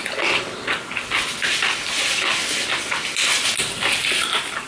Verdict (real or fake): real